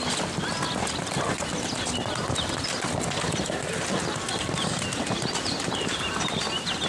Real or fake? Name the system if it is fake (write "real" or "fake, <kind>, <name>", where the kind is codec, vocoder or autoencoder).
real